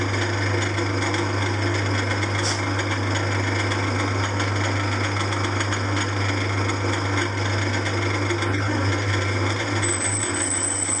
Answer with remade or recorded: recorded